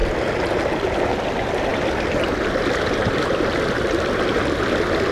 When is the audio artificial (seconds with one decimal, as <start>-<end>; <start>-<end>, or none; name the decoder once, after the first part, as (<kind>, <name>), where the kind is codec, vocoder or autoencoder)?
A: 1.7-2.7 (vocoder, BigVGAN v2)